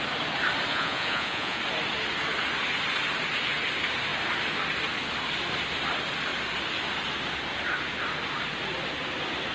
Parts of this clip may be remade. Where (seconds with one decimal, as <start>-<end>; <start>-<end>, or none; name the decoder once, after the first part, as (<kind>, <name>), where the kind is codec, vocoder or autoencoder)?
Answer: 0.7-1.6 (vocoder, Vocos)